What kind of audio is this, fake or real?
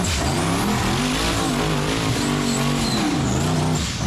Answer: real